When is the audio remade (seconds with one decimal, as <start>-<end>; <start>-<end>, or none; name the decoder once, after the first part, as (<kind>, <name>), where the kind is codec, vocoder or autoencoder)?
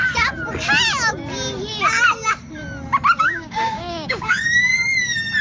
3.2-4.7 (codec, DAC)